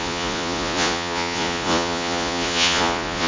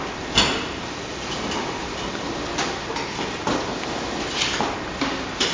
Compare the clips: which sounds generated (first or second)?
first